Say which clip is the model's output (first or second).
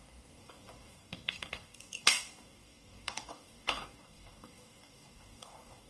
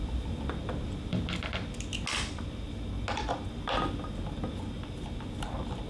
first